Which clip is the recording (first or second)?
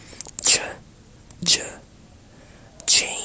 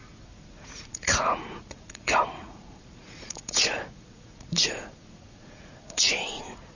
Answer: first